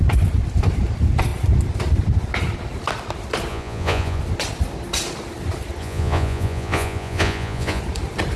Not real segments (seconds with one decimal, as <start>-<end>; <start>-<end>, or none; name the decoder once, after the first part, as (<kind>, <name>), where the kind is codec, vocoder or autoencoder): 3.5-4.2 (vocoder, Vocos); 5.8-7.8